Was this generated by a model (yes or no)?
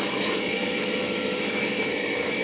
yes